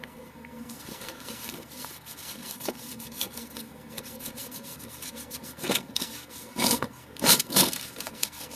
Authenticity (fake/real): fake